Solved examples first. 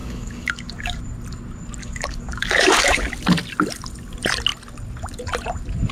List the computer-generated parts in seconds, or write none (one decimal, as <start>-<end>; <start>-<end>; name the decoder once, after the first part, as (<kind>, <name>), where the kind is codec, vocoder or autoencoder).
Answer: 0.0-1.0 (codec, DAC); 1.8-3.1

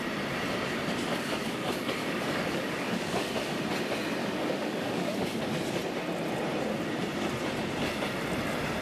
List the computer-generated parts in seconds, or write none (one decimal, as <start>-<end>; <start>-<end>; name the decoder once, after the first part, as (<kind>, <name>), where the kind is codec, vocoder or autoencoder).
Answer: 1.1-3.6 (codec, DAC); 4.2-5.5

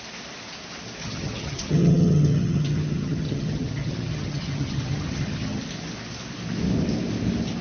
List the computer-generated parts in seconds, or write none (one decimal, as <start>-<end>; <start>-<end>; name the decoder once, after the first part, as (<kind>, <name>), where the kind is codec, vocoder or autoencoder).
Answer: 1.0-5.6 (vocoder, HiFi-GAN)